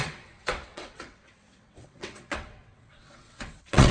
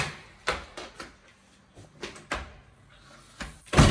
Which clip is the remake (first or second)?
first